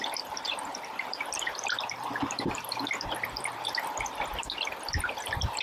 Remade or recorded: remade